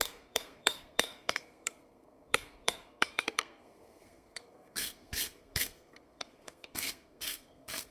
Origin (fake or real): fake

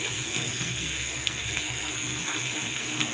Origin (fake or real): fake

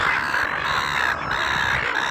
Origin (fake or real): real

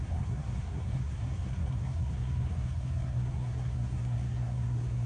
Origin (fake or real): fake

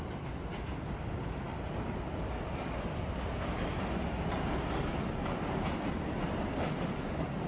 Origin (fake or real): real